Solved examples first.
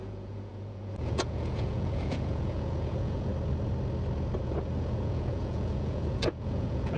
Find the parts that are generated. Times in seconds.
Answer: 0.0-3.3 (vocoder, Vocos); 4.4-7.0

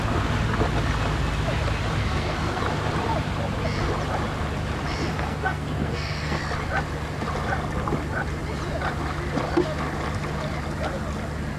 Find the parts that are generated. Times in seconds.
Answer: 2.0-2.6 (codec, SNAC); 5.1-6.4

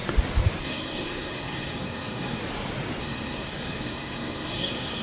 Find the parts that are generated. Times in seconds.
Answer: 0.6-2.4 (codec, SNAC); 3.0-5.0

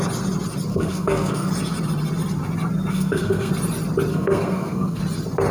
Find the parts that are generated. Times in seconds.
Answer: 0.7-1.5 (codec, SNAC); 2.9-3.5; 4.1-5.0

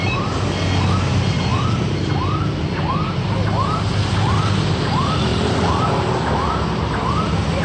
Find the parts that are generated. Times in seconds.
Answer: 5.3-6.5 (vocoder, BigVGAN v2)

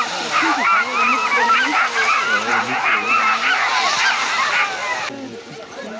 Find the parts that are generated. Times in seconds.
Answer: none